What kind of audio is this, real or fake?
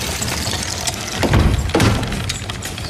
real